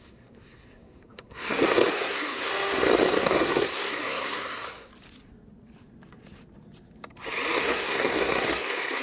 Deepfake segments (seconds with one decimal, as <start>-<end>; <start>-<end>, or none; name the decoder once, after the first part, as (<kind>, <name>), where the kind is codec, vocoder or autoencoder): 0.0-2.5 (codec, SNAC); 3.2-4.9; 7.6-9.0